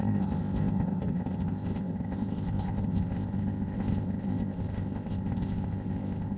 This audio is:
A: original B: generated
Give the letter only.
B